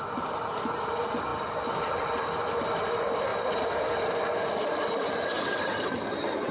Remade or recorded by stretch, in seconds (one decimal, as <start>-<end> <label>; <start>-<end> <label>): 0.0-6.5 recorded